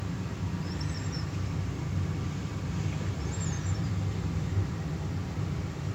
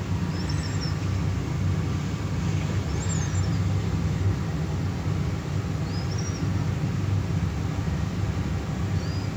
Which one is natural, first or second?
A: second